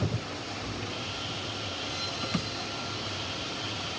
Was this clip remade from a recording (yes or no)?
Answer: no